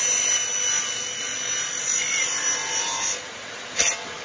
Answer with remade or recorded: recorded